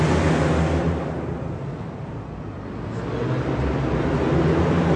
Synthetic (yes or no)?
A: no